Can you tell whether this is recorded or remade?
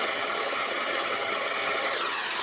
remade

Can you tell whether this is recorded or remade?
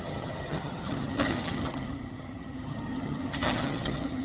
remade